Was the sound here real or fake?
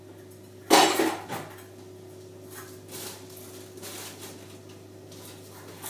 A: real